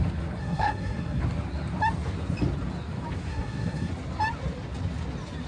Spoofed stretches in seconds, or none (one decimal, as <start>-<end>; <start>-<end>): 0.4-1.2; 3.3-3.9